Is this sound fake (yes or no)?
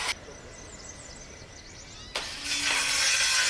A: no